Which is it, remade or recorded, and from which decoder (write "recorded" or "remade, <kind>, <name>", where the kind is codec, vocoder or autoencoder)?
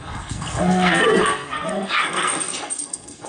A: remade, codec, SNAC